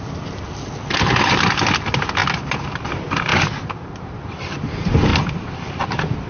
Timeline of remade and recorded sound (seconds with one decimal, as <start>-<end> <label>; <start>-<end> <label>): 0.0-2.2 remade; 2.2-2.8 recorded; 2.8-3.3 remade; 3.3-4.0 recorded; 4.0-5.1 remade; 5.1-5.8 recorded; 5.8-6.3 remade